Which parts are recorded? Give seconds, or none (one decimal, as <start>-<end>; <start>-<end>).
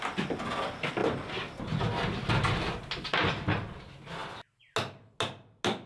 0.0-5.9